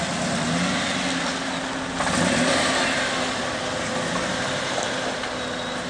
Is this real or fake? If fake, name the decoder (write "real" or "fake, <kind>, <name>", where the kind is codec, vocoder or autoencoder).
real